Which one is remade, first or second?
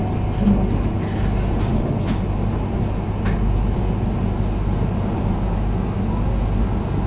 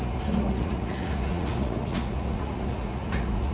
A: second